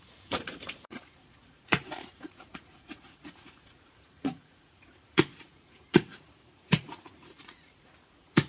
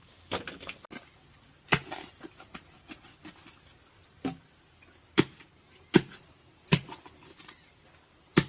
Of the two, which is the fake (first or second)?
first